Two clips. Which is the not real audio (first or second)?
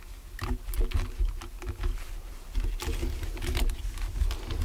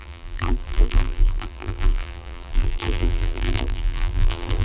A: second